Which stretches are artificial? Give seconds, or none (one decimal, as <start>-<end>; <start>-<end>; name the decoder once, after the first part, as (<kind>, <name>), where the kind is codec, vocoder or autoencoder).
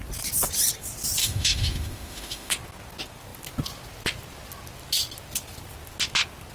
1.2-2.5 (autoencoder, DAC-VAE)